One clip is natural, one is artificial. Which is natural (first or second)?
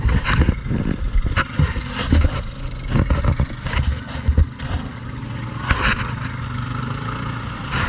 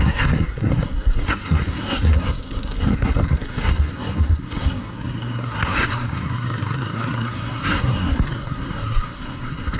first